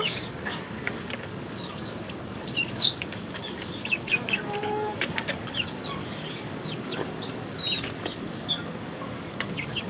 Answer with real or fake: fake